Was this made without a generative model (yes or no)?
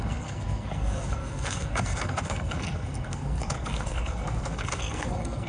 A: no